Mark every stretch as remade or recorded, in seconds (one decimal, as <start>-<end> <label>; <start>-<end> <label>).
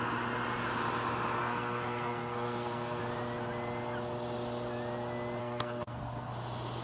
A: 0.0-1.4 recorded; 1.4-3.0 remade; 3.0-5.4 recorded; 5.4-6.3 remade; 6.3-6.8 recorded